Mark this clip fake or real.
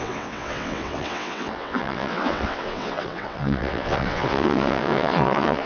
fake